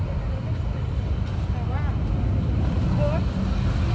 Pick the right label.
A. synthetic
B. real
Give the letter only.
B